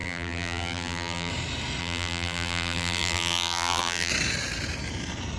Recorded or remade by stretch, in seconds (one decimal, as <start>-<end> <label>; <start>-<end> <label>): 0.0-1.3 remade; 1.3-1.8 recorded; 1.8-4.1 remade; 4.1-5.4 recorded

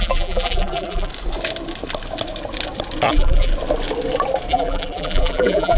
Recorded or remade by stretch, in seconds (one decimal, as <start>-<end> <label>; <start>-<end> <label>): 0.0-1.1 remade; 1.1-3.1 recorded; 3.1-3.5 remade; 3.5-4.5 recorded; 4.5-5.8 remade

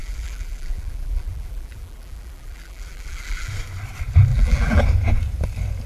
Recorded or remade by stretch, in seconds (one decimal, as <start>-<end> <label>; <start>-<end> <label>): 0.0-3.5 remade; 3.5-4.3 recorded; 4.3-4.8 remade; 4.8-5.9 recorded

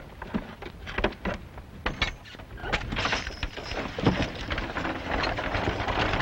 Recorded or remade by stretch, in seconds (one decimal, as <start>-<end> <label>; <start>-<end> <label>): 0.0-2.6 recorded; 2.6-3.2 remade; 3.2-6.2 recorded

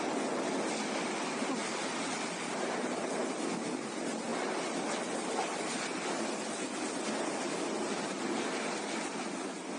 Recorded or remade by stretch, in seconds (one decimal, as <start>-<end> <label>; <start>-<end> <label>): 0.0-1.6 recorded; 1.6-2.9 remade; 2.9-9.8 recorded